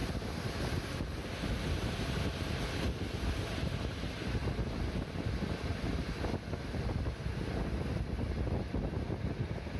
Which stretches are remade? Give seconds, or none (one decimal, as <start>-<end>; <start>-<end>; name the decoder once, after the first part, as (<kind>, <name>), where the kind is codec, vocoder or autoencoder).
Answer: none